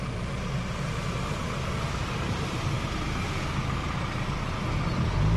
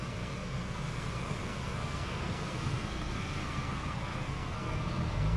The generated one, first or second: second